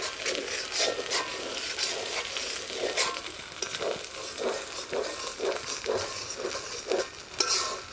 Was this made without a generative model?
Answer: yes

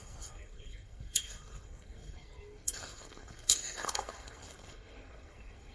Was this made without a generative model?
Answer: no